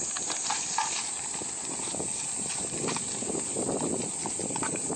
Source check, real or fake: real